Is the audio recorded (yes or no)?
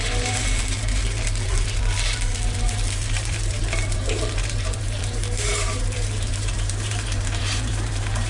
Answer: no